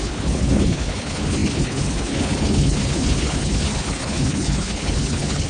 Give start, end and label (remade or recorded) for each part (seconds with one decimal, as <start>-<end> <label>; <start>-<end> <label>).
0.0-5.5 remade